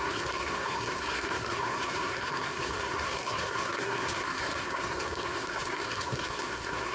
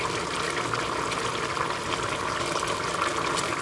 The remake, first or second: first